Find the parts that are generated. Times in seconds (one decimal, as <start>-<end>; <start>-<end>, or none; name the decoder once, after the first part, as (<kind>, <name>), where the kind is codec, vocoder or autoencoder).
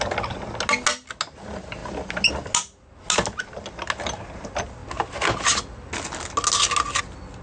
none